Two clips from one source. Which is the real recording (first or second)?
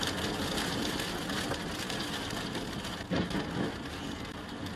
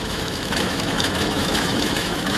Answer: first